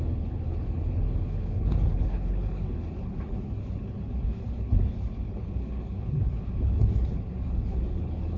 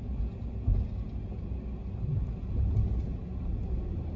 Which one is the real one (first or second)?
second